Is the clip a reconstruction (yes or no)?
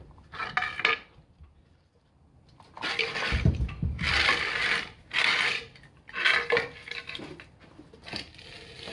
no